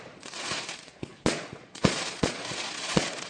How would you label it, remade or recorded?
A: remade